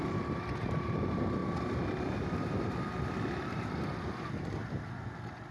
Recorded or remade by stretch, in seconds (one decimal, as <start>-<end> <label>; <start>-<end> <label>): 0.0-5.5 recorded